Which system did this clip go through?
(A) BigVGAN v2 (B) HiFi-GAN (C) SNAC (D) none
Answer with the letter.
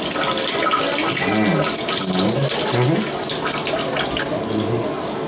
D